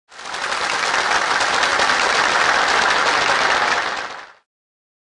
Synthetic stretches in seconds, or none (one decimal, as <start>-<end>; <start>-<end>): none